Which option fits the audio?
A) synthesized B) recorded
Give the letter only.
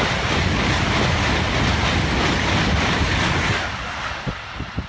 B